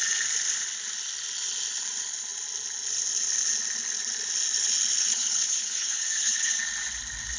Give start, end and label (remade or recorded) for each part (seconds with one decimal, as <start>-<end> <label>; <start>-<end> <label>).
0.0-5.1 recorded; 5.1-6.5 remade; 6.5-7.4 recorded